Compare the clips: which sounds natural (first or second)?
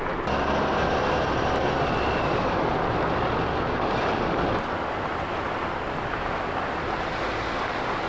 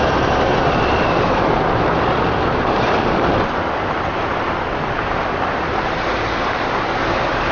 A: first